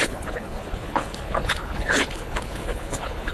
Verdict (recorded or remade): remade